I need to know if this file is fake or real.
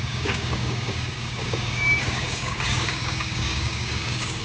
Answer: fake